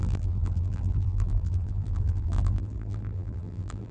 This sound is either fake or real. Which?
fake